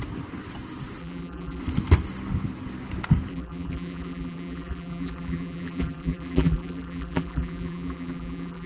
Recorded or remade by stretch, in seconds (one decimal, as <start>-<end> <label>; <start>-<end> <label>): 0.0-1.0 recorded; 1.0-1.6 remade; 1.6-3.3 recorded; 3.3-8.7 remade